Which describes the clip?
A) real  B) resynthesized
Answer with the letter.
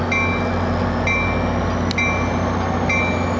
A